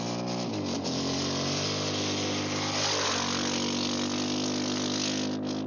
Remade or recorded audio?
recorded